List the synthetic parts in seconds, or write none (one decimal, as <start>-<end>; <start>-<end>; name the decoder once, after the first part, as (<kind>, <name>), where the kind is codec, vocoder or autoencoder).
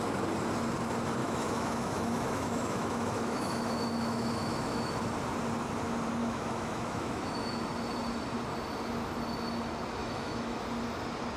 1.2-4.9 (autoencoder, DAC-VAE); 6.2-7.6; 10.0-10.6